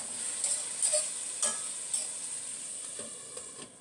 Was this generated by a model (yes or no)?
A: no